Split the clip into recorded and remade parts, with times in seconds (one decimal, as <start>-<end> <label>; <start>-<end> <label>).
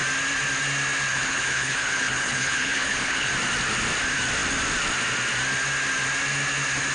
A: 0.0-1.1 recorded; 1.1-3.3 remade; 3.3-6.9 recorded